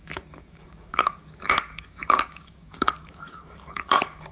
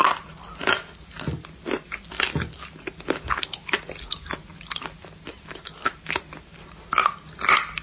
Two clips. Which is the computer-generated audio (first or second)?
first